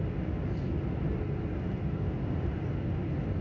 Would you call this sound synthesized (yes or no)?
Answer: no